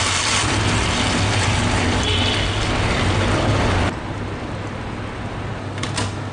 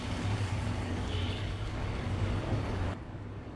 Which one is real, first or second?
first